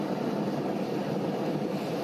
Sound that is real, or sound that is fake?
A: fake